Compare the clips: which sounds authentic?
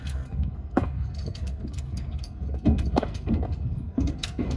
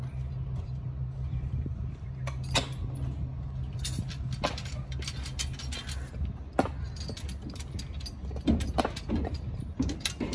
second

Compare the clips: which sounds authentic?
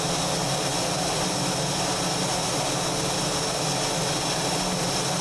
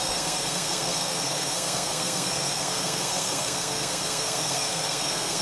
first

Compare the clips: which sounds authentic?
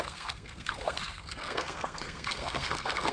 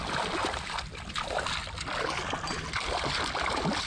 second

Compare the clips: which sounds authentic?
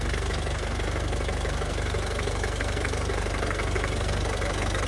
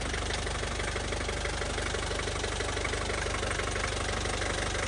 second